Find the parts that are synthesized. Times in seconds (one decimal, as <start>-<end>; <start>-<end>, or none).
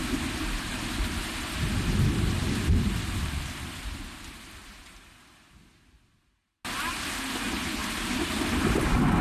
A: none